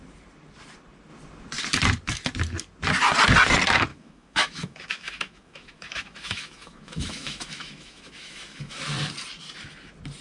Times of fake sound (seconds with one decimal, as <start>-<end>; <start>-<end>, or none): 3.9-8.8